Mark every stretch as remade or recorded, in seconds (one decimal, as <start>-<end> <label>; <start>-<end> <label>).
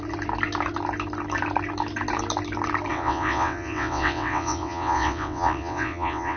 0.0-2.9 recorded; 2.9-6.4 remade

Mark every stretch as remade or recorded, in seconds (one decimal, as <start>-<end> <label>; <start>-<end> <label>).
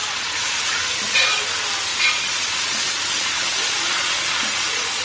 0.0-1.4 remade; 1.4-1.9 recorded; 1.9-5.0 remade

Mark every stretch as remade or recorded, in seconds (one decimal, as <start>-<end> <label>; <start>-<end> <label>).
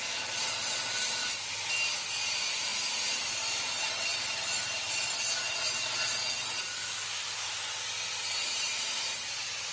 0.0-6.7 recorded; 6.7-7.5 remade; 7.5-9.7 recorded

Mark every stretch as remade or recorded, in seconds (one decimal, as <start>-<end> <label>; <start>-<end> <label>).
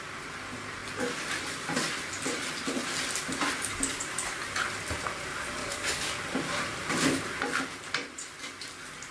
0.0-5.6 recorded; 5.6-6.2 remade; 6.2-9.1 recorded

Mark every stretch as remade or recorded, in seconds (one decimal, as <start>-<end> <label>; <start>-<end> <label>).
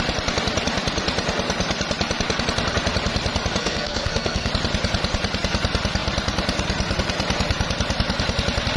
0.0-3.6 recorded; 3.6-4.5 remade; 4.5-8.8 recorded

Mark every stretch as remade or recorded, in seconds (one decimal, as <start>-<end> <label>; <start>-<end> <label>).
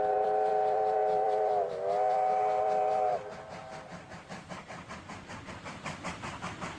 0.0-3.1 remade; 3.1-5.5 recorded; 5.5-6.8 remade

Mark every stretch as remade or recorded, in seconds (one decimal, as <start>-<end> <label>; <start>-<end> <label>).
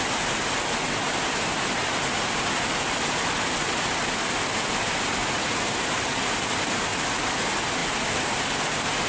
0.0-5.2 recorded; 5.2-5.7 remade; 5.7-9.1 recorded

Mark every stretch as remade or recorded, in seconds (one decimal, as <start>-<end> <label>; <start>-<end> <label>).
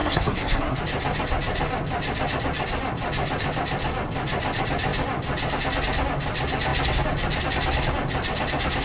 0.0-0.8 remade; 0.8-8.8 recorded